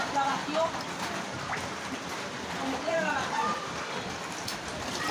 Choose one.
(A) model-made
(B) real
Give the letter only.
A